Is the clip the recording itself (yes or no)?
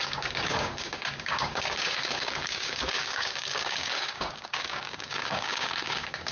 no